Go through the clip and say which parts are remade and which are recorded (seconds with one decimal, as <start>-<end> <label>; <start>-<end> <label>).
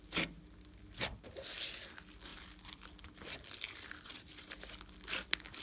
0.0-2.3 recorded; 2.3-2.8 remade; 2.8-5.6 recorded